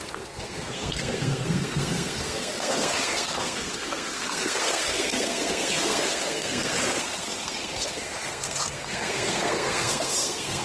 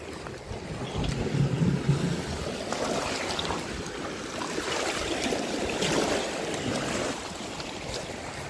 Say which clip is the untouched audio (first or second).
second